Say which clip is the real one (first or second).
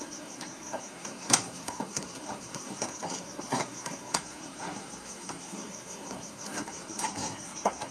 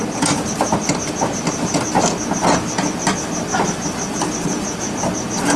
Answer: second